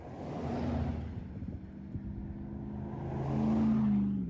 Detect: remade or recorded recorded